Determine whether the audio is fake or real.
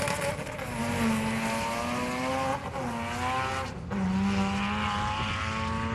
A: real